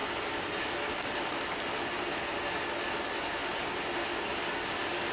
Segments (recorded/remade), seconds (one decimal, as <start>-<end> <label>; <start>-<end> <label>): 0.0-5.1 recorded